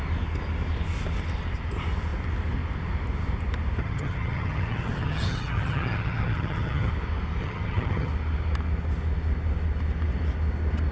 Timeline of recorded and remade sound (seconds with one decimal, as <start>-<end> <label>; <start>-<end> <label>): 0.0-3.8 recorded; 3.8-6.9 remade; 6.9-7.4 recorded; 7.4-8.1 remade; 8.1-10.9 recorded